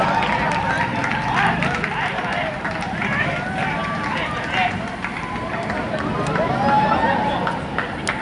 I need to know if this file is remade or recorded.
recorded